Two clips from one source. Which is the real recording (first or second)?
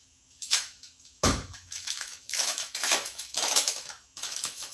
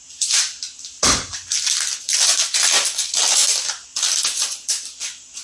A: second